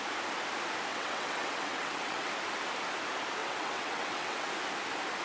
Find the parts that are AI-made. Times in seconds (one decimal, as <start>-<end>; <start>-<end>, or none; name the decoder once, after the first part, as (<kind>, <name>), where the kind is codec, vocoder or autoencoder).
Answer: 0.9-2.3 (vocoder, WaveNeXt); 3.4-4.5